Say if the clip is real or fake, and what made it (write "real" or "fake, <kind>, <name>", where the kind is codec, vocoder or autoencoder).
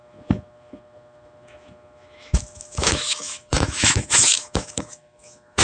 fake, autoencoder, DAC-VAE